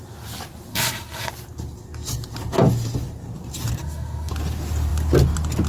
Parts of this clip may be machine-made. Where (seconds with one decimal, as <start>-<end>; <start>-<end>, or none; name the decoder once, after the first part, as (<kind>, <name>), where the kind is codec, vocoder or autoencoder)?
0.7-1.3 (codec, SNAC); 3.8-4.3